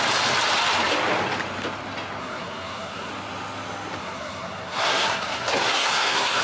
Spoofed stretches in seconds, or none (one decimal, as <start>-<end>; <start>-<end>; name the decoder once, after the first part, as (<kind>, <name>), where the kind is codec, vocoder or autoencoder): 2.2-3.1 (codec, SNAC); 4.0-6.4